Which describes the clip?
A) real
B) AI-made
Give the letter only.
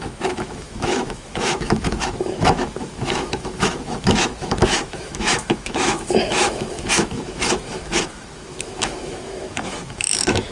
B